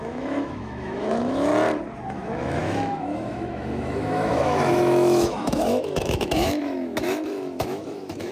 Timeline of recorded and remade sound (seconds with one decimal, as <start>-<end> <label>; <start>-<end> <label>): 0.0-1.5 remade; 1.5-2.1 recorded; 2.1-8.3 remade